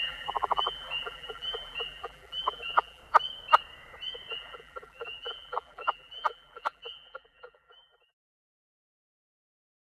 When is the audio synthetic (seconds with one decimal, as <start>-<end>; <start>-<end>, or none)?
0.0-3.0; 4.3-9.8